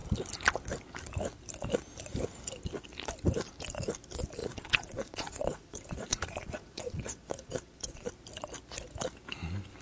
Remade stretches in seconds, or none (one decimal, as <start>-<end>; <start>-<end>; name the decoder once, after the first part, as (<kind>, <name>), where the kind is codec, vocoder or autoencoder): 4.4-8.1 (vocoder, Vocos)